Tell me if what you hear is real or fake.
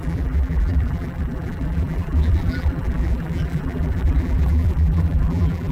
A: fake